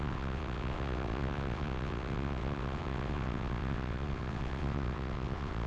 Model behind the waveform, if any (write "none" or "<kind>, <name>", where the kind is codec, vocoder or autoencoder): vocoder, WaveNeXt